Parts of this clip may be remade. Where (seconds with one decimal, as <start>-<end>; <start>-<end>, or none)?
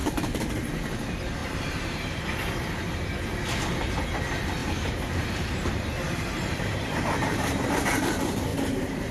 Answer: 0.0-0.5; 1.4-2.2; 4.6-7.7; 8.5-9.1